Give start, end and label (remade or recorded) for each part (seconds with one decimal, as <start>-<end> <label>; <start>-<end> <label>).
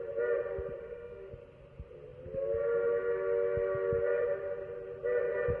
0.0-0.8 recorded; 0.8-1.3 remade; 1.3-5.6 recorded